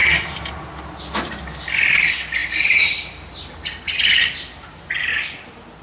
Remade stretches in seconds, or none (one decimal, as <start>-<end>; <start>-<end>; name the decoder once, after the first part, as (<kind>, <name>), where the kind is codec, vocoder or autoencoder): 0.0-0.8 (vocoder, BigVGAN v2)